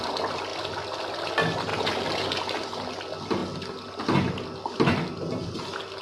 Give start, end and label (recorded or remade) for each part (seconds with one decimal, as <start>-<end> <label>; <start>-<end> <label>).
0.0-6.0 recorded